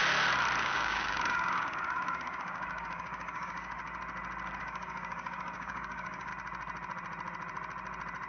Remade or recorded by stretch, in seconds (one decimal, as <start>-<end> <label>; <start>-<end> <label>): 0.0-0.6 recorded; 0.6-3.8 remade; 3.8-4.6 recorded; 4.6-6.3 remade; 6.3-8.3 recorded